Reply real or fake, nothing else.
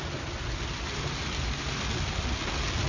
real